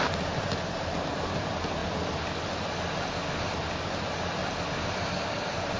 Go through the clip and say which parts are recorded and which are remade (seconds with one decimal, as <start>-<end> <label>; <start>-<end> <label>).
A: 0.0-1.8 remade; 1.8-3.8 recorded; 3.8-4.4 remade; 4.4-5.2 recorded; 5.2-5.8 remade